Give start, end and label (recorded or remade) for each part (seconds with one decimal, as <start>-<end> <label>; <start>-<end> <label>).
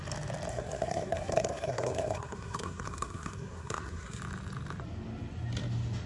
0.0-0.5 recorded; 0.5-4.2 remade; 4.2-6.1 recorded